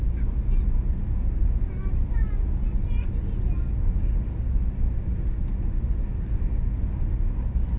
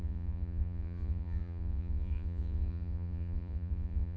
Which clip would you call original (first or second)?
first